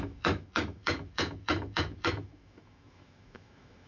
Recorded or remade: remade